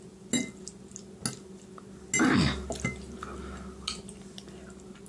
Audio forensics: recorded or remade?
recorded